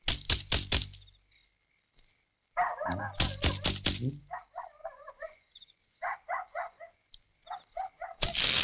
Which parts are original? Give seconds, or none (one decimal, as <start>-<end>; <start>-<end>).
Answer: 0.0-4.8; 7.1-8.6

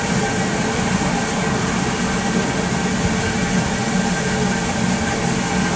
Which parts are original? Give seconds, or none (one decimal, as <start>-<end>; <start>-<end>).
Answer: 0.0-5.8

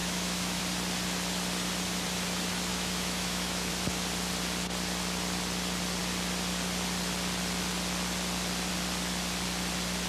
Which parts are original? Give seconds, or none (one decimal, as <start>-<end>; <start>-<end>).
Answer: 0.6-2.7; 3.7-10.1

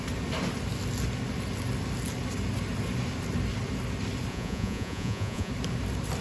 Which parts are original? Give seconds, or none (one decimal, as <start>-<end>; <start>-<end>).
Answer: 0.0-4.3; 5.5-6.2

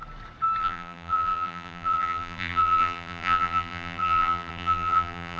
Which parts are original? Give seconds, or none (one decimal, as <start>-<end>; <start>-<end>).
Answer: 0.0-0.6